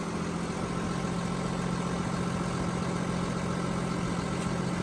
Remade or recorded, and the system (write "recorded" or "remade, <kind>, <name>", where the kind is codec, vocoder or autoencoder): recorded